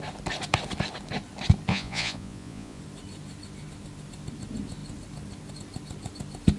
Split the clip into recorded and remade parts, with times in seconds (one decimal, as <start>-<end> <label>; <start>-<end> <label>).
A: 0.0-1.7 recorded; 1.7-2.8 remade; 2.8-6.6 recorded